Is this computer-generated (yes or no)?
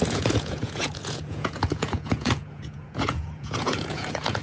yes